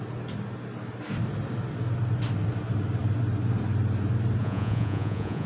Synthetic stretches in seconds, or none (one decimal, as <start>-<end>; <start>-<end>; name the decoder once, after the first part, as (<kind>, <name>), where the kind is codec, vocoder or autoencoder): 4.4-5.5 (vocoder, Vocos)